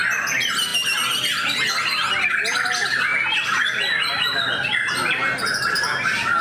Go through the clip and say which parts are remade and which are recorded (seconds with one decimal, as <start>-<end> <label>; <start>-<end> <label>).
0.0-6.4 recorded